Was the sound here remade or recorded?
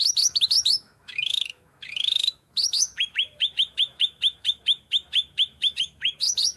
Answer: remade